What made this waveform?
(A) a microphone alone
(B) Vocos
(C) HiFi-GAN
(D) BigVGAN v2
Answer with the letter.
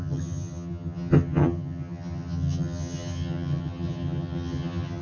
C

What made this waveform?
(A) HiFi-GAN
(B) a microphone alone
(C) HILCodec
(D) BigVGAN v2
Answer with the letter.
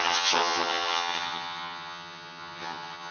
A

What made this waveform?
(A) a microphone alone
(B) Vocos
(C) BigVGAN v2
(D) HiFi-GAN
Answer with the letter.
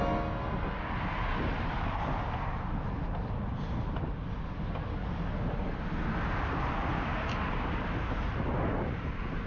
A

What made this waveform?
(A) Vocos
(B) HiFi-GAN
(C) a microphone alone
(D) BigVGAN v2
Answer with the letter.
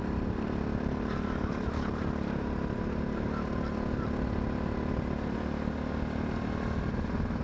C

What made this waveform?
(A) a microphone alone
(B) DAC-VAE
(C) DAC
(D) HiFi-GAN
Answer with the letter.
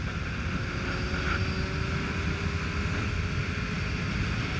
A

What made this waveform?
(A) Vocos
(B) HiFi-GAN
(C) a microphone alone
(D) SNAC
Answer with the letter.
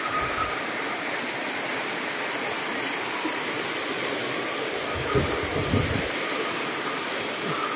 C